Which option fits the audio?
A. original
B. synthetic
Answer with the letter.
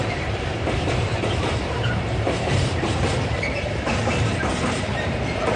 B